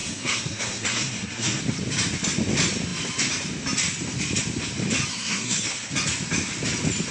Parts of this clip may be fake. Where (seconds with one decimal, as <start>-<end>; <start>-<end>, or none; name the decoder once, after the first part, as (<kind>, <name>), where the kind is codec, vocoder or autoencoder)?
0.0-1.6 (codec, SNAC); 5.1-5.9